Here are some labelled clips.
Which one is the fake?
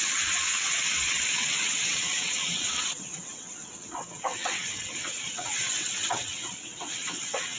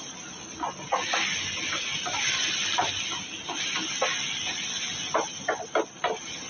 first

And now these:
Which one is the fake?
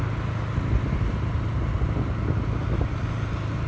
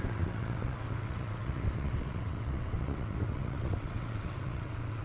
second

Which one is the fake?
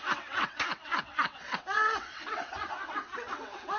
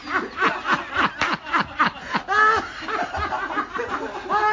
first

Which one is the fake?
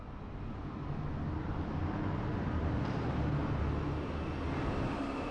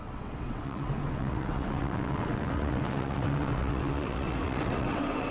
second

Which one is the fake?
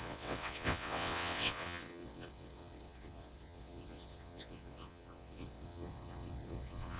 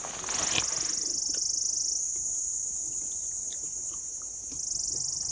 first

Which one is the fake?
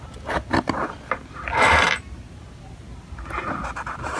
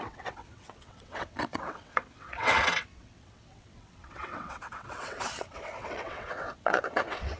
second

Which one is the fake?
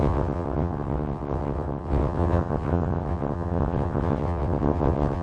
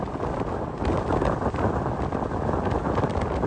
first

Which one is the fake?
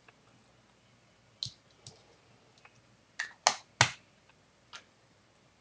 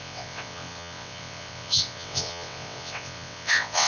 second